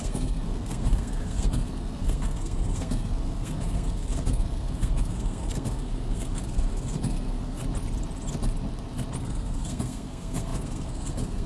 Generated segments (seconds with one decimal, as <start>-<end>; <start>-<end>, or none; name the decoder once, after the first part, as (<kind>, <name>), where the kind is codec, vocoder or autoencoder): 0.0-7.6 (codec, SNAC); 9.2-11.5